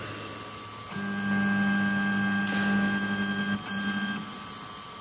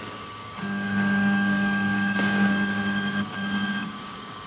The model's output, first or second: second